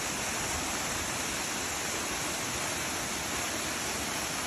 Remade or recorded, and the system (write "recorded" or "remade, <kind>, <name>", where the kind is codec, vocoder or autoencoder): recorded